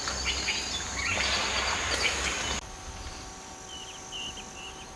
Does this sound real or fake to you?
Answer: real